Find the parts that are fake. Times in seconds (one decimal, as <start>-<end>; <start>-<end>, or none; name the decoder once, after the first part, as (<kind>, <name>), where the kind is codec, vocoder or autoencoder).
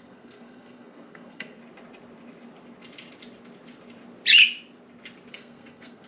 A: 0.0-1.6 (codec, SNAC); 5.3-6.1